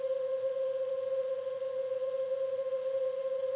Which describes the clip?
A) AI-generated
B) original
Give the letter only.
A